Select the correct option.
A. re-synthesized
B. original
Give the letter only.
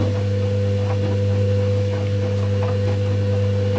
B